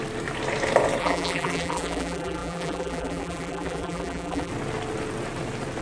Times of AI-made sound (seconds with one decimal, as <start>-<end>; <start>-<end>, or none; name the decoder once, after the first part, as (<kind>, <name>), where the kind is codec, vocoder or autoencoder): 1.0-4.5 (vocoder, BigVGAN v2)